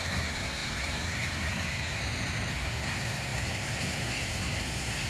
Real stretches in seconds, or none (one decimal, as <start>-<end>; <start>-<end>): 2.0-2.5